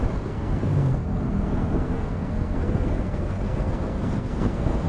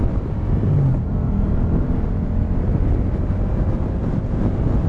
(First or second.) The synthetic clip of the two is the first